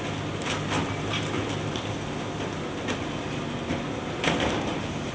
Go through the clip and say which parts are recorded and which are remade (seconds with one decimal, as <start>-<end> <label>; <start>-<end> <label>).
0.0-5.1 recorded